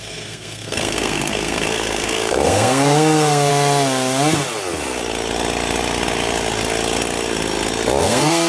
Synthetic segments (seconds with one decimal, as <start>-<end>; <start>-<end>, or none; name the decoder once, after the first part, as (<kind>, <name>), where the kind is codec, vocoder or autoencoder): 0.0-3.5 (codec, SNAC); 8.0-8.5